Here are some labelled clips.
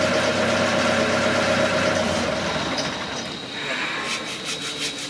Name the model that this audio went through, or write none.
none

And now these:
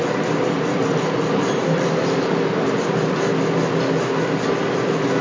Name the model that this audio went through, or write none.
none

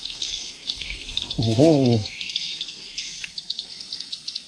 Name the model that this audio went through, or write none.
codec, SNAC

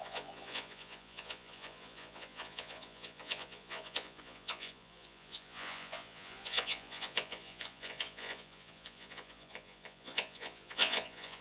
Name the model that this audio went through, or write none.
vocoder, Vocos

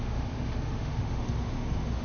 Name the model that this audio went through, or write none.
autoencoder, DAC-VAE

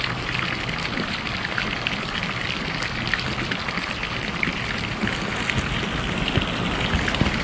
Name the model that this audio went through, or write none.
none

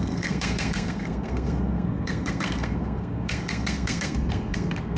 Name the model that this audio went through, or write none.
codec, SNAC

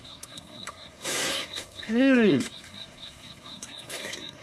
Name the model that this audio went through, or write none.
codec, SNAC